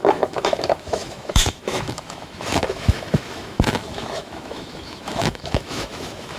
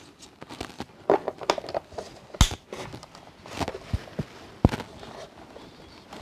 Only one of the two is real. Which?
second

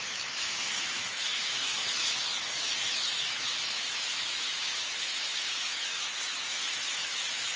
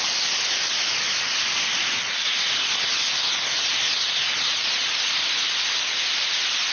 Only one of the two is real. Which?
second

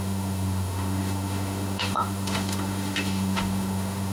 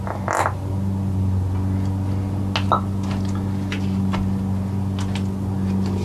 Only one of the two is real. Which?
second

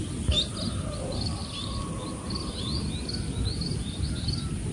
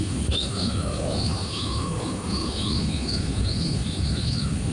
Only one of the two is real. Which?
first